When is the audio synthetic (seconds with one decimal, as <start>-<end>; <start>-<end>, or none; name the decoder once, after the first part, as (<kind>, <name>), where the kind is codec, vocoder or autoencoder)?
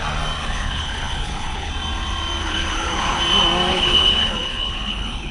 0.4-1.7 (codec, HILCodec); 2.4-3.2; 3.7-5.3